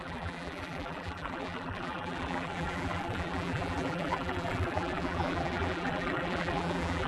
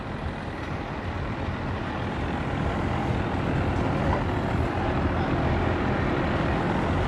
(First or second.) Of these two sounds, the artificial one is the first